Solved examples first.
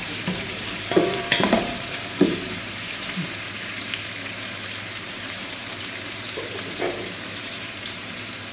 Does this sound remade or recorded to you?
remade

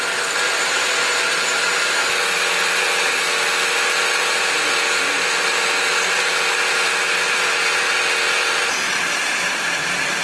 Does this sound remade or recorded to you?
recorded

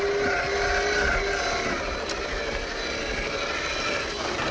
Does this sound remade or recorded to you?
recorded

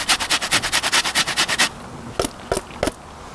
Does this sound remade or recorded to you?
recorded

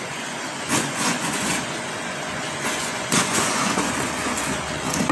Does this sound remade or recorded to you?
remade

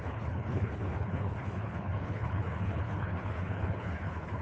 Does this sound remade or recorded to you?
remade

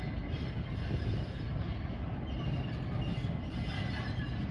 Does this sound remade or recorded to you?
recorded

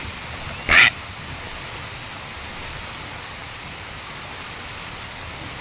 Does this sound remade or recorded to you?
recorded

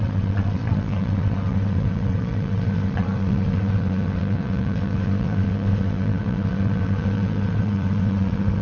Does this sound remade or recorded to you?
remade